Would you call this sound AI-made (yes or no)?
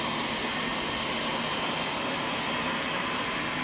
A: no